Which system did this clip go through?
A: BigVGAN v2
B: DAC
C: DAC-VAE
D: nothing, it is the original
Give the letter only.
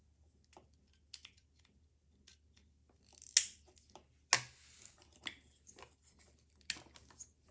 D